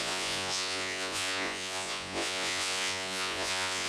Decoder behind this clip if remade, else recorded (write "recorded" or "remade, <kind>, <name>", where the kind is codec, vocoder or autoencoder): remade, vocoder, Vocos